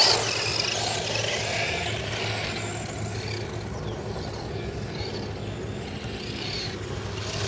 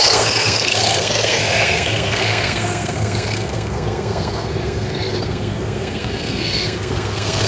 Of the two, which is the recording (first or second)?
first